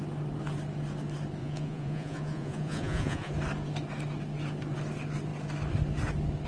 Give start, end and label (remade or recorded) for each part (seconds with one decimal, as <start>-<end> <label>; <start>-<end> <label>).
0.0-1.4 recorded; 1.4-3.3 remade; 3.3-6.5 recorded